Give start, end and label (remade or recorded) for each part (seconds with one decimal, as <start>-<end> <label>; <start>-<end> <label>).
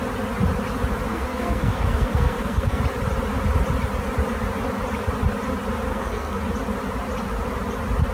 0.0-1.1 recorded; 1.1-2.8 remade; 2.8-5.9 recorded; 5.9-6.4 remade; 6.4-8.1 recorded